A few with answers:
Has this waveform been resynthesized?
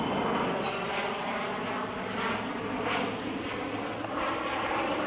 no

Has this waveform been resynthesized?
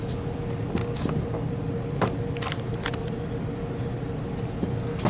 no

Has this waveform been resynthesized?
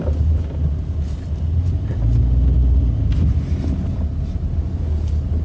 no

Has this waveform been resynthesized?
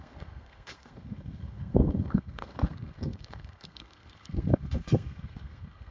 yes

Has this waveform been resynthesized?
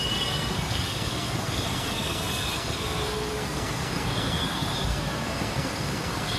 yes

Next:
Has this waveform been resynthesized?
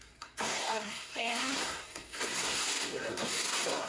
yes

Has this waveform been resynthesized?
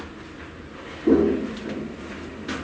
no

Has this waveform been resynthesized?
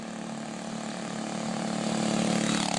no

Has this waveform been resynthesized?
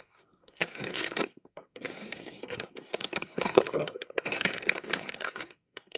yes